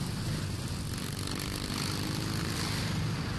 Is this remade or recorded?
recorded